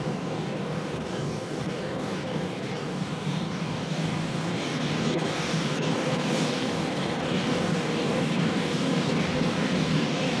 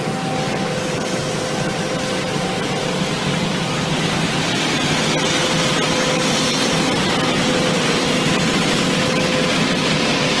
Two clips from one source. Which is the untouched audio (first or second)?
second